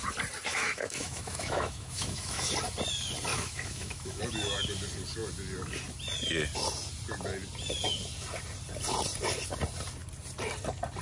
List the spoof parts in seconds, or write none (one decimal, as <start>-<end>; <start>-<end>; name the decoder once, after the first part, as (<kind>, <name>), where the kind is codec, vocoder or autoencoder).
0.5-2.5 (autoencoder, DAC-VAE); 3.3-4.2

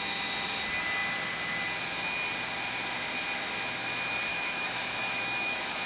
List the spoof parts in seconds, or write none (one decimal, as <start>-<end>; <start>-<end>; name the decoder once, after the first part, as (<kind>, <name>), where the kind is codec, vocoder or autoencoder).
4.3-5.9 (autoencoder, DAC-VAE)

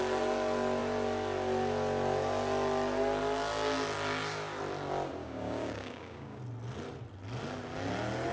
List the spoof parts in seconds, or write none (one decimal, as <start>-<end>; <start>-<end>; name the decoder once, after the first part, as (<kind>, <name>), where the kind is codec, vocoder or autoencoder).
5.2-6.4 (codec, DAC)

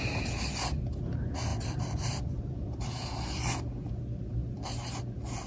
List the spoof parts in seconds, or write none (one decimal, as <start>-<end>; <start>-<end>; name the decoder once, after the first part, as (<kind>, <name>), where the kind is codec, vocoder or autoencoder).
1.5-3.9 (vocoder, BigVGAN v2)

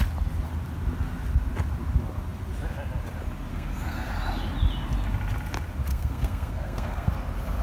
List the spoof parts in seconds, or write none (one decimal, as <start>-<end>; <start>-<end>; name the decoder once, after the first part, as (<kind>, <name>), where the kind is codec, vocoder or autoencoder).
3.5-4.1 (codec, SNAC); 5.9-7.1

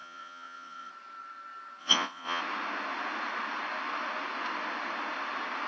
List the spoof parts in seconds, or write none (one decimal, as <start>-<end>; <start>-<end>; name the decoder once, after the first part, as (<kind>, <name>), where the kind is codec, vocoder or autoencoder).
0.0-0.9 (vocoder, Vocos); 1.8-2.4